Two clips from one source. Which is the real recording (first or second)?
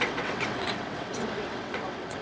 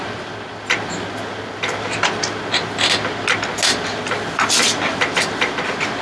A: second